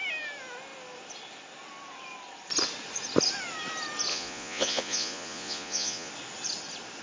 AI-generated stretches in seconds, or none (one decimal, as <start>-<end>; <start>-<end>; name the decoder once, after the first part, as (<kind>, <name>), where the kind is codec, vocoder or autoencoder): 4.1-6.1 (vocoder, Vocos)